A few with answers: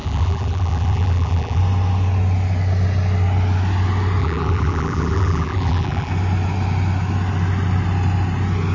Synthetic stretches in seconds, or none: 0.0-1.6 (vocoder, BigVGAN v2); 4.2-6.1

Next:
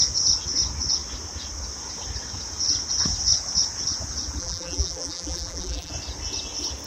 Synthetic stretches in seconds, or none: 4.4-5.9 (vocoder, BigVGAN v2)

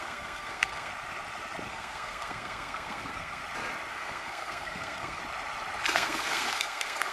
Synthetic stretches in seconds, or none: 0.0-0.9 (codec, SNAC); 1.7-3.4; 3.9-5.2; 5.9-7.1